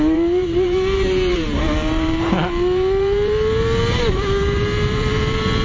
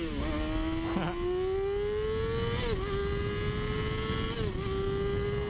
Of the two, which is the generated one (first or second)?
first